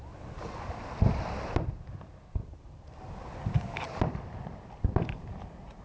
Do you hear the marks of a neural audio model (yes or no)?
no